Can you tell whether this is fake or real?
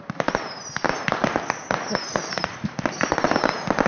real